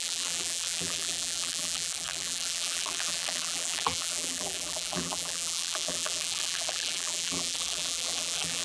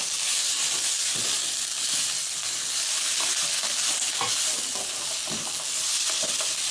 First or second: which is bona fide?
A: second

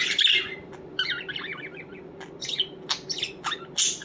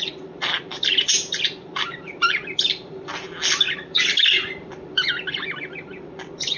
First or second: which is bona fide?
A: first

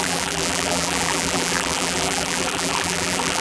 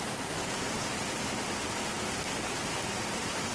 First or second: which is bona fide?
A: second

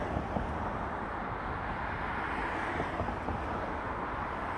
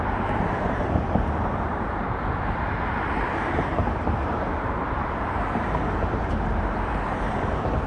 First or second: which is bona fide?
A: first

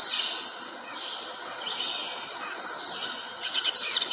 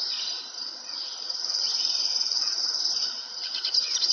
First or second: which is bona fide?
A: first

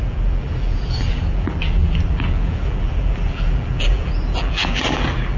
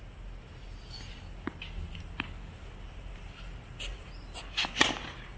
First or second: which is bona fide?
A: second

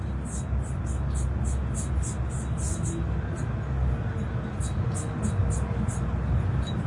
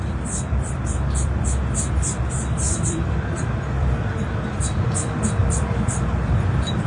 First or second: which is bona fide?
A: first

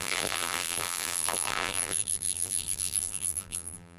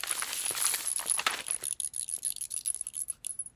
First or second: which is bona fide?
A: second